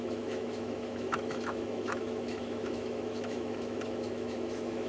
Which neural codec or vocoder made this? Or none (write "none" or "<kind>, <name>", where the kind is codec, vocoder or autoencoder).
autoencoder, DAC-VAE